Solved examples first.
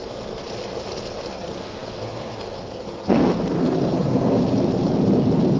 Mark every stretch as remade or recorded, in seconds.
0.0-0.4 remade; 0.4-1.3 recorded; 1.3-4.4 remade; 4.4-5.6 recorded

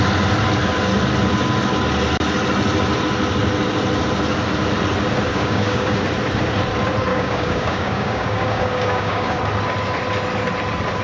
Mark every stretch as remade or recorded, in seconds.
0.0-5.3 recorded; 5.3-6.0 remade; 6.0-7.1 recorded; 7.1-9.4 remade; 9.4-11.0 recorded

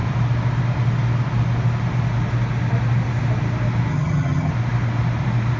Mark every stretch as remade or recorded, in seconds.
0.0-3.9 recorded; 3.9-4.5 remade; 4.5-5.6 recorded

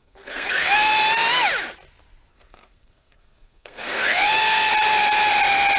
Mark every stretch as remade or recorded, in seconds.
0.0-0.9 remade; 0.9-2.3 recorded; 2.3-4.7 remade; 4.7-5.8 recorded

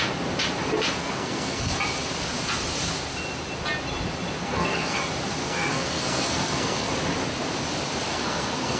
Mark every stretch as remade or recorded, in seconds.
0.0-1.0 recorded; 1.0-1.7 remade; 1.7-4.4 recorded; 4.4-5.0 remade; 5.0-5.4 recorded; 5.4-6.9 remade; 6.9-8.1 recorded; 8.1-8.8 remade

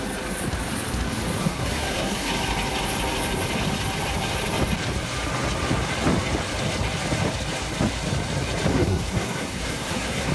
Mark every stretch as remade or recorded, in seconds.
0.0-1.4 recorded; 1.4-2.3 remade; 2.3-8.7 recorded; 8.7-10.3 remade

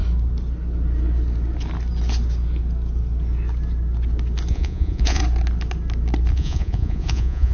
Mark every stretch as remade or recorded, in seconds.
0.0-4.5 recorded; 4.5-5.2 remade; 5.2-6.3 recorded; 6.3-7.5 remade

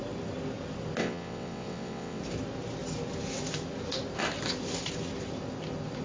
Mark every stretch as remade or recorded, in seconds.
0.0-1.0 recorded; 1.0-2.2 remade; 2.2-6.0 recorded